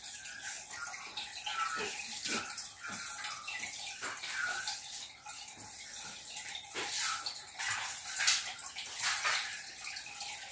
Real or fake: real